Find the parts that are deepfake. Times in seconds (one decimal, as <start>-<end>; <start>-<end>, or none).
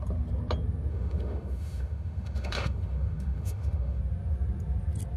0.9-4.0